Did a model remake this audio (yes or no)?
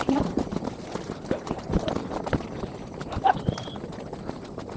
no